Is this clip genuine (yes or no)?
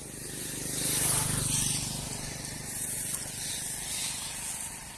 yes